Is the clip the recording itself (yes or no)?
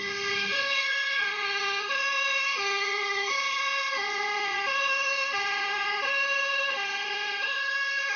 no